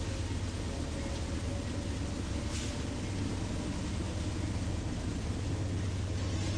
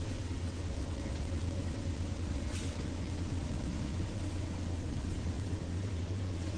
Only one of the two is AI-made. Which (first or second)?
second